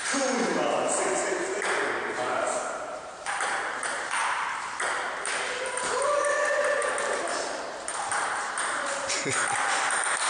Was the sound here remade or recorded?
remade